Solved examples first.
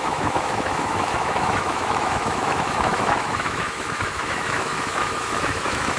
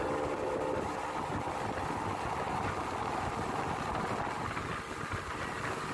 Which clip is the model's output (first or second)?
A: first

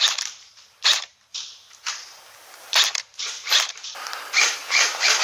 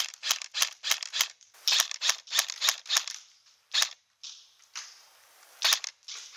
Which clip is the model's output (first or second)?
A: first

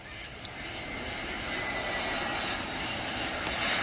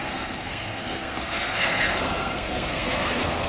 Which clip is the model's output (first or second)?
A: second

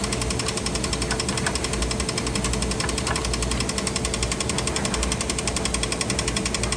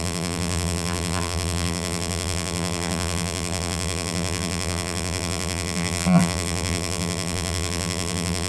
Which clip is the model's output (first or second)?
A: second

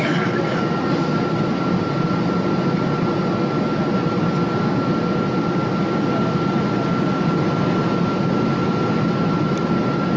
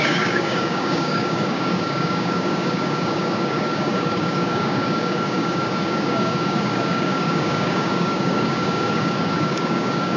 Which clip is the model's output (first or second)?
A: second